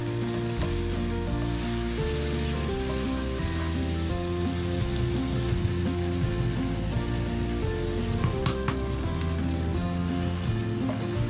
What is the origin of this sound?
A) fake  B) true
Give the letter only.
B